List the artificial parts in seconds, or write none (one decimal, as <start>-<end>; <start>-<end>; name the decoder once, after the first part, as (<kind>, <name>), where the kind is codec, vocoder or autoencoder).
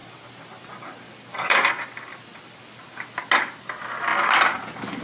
0.0-3.0 (vocoder, BigVGAN v2)